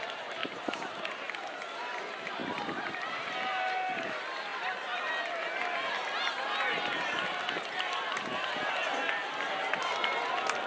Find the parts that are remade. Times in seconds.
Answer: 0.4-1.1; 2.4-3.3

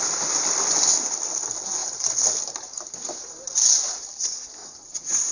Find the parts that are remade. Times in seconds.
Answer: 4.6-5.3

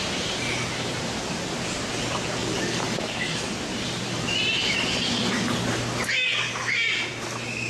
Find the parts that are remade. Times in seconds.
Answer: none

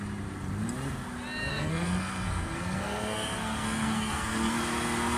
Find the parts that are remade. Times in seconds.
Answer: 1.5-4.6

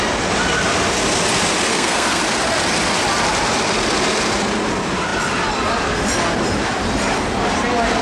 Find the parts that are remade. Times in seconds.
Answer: 1.7-2.2

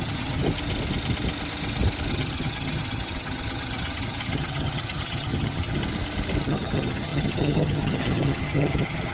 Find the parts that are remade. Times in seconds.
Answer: 0.0-0.4; 2.1-5.8; 6.4-9.1

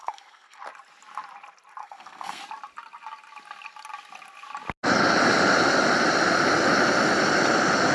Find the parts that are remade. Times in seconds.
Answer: 0.0-0.6; 1.8-2.4